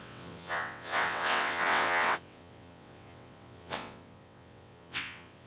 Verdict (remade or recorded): remade